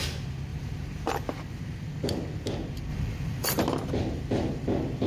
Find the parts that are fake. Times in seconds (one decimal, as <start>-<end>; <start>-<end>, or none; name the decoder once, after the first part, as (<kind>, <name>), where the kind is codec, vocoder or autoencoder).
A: 0.5-1.1 (vocoder, BigVGAN v2); 2.9-3.6